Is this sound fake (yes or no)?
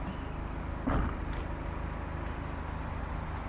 no